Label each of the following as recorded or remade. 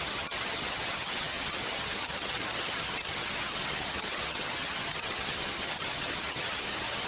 remade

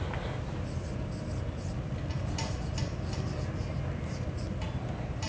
recorded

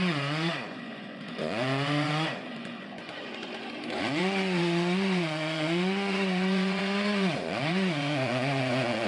remade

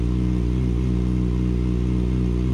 recorded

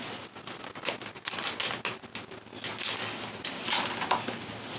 recorded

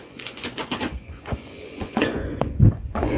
remade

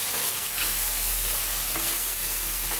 remade